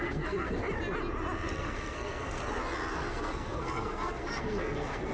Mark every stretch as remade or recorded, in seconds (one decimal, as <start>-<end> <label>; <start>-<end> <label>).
0.0-0.6 remade; 0.6-1.5 recorded; 1.5-2.4 remade; 2.4-3.1 recorded; 3.1-5.1 remade